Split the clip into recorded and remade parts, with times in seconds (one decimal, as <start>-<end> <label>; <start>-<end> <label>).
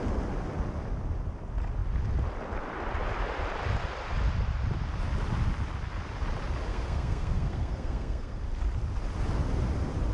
0.0-6.7 recorded; 6.7-8.4 remade; 8.4-10.1 recorded